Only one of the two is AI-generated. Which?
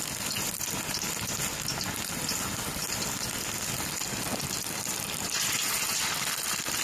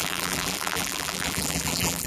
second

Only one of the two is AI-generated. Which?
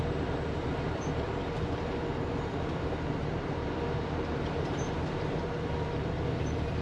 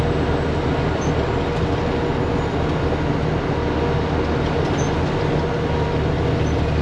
first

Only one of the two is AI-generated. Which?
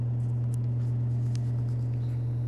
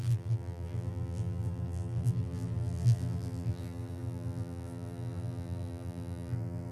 second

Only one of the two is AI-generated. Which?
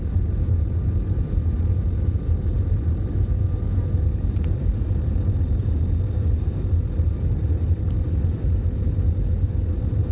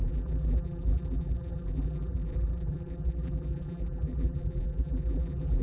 second